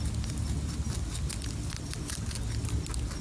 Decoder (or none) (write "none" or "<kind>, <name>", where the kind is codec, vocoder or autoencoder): none